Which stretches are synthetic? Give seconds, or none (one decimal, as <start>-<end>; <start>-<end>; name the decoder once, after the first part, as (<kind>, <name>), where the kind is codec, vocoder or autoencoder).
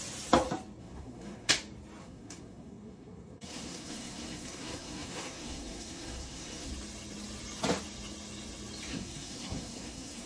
0.8-1.5 (codec, SNAC); 2.0-6.7; 8.9-10.3